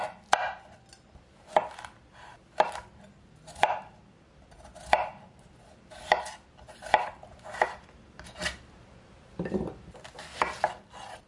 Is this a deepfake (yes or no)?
no